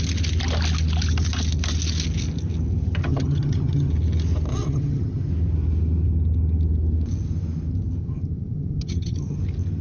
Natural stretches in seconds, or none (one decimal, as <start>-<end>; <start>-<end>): 0.0-3.0; 3.9-4.5; 5.3-8.0; 9.4-9.8